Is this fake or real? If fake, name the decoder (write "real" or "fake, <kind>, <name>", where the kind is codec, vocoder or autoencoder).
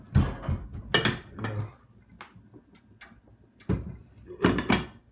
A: real